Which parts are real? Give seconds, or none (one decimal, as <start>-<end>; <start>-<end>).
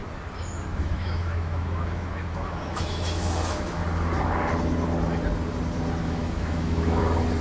0.0-0.7; 3.8-6.0; 7.0-7.4